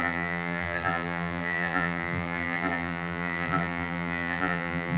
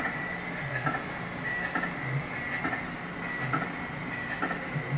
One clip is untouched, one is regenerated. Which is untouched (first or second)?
second